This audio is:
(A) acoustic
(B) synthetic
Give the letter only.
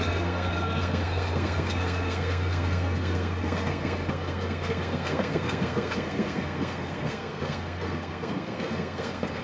B